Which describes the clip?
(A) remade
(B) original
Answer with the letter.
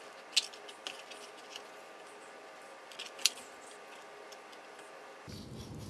B